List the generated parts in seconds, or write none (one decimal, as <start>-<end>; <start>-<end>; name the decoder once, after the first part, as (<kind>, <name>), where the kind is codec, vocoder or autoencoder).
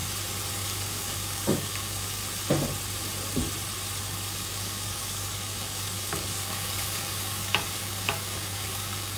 0.5-2.2 (codec, DAC); 4.0-9.2